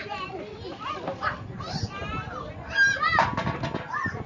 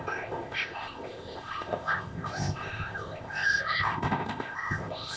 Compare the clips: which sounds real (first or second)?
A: first